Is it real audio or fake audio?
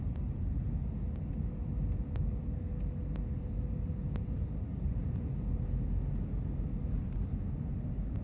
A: real